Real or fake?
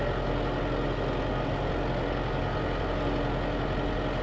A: real